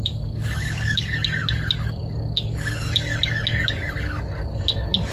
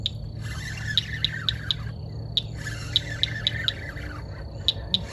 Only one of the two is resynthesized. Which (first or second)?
first